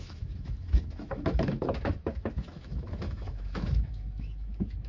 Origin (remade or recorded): remade